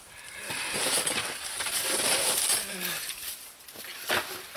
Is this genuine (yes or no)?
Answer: no